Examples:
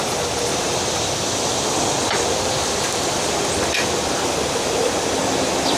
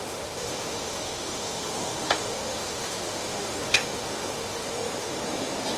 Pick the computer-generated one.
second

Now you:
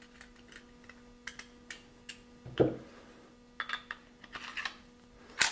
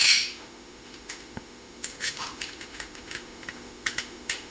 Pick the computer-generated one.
second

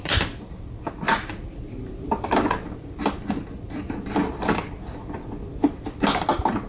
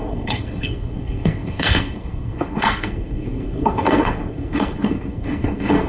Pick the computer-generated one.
second